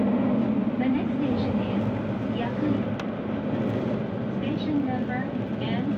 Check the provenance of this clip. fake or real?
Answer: real